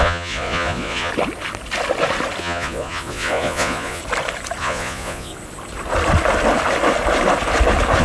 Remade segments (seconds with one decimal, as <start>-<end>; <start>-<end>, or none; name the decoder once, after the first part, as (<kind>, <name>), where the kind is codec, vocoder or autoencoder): 0.0-1.1 (vocoder, Vocos); 2.4-4.0; 4.6-5.3